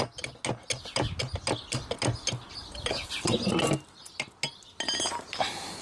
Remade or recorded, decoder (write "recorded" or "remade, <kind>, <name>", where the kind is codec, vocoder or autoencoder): recorded